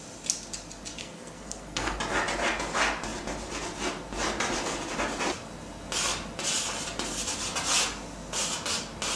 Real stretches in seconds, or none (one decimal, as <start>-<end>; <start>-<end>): 0.0-1.0; 2.0-9.2